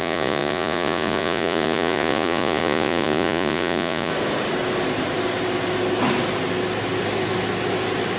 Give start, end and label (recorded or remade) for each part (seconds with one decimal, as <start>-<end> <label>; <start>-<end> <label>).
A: 0.0-4.1 remade; 4.1-8.2 recorded